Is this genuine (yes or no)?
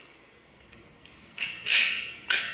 no